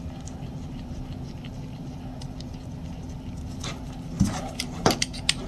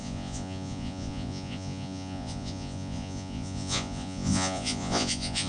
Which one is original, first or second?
first